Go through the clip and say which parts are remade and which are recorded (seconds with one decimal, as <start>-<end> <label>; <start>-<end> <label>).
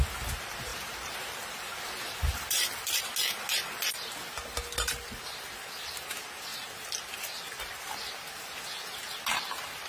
0.0-0.7 recorded; 0.7-3.0 remade; 3.0-9.9 recorded